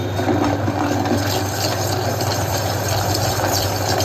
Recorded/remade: recorded